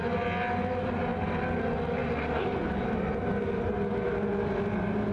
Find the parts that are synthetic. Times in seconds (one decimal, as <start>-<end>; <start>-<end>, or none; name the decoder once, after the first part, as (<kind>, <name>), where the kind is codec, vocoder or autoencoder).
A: none